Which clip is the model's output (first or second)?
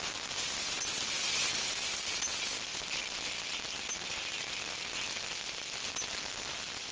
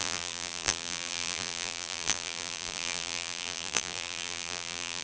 second